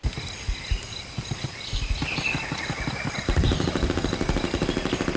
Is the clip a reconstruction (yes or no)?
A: no